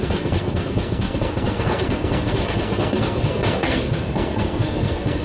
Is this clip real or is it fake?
fake